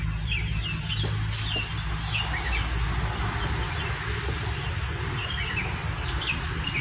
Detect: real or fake real